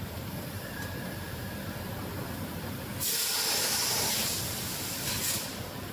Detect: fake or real fake